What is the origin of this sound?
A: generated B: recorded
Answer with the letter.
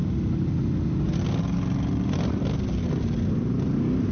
B